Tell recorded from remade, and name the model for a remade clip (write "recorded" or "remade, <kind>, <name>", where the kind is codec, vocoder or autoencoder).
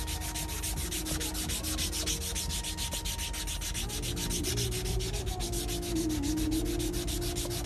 recorded